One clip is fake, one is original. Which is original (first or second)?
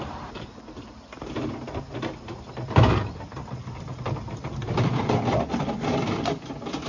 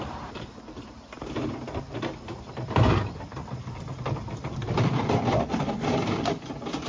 first